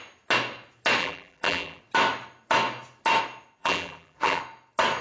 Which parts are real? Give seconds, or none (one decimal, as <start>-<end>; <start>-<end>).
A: 0.0-1.0; 1.8-3.6; 4.4-5.0